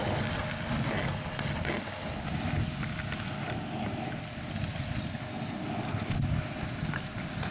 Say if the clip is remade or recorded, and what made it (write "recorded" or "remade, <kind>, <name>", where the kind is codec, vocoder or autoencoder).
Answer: recorded